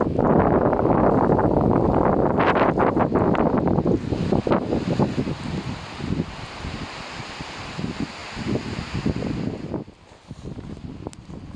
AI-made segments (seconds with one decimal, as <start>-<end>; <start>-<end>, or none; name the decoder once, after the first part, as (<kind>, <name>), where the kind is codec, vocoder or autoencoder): none